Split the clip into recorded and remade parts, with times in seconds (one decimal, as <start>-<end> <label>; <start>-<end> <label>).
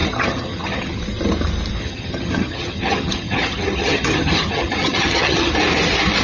0.0-1.0 remade; 1.0-1.8 recorded; 1.8-5.5 remade; 5.5-6.2 recorded